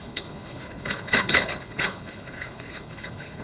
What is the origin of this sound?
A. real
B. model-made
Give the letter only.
B